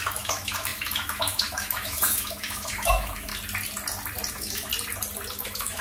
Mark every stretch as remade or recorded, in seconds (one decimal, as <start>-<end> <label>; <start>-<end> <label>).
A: 0.0-3.3 remade; 3.3-4.3 recorded; 4.3-4.7 remade; 4.7-5.3 recorded; 5.3-5.8 remade